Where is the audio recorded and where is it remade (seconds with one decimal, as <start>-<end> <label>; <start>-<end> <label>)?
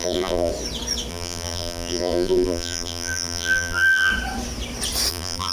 0.0-0.5 remade; 0.5-1.1 recorded; 1.1-4.1 remade; 4.1-5.1 recorded; 5.1-5.5 remade